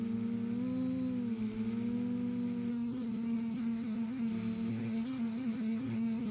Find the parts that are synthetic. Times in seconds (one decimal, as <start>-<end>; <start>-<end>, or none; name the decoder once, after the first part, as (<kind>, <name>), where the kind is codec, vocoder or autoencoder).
2.7-4.3 (codec, SNAC); 4.7-6.3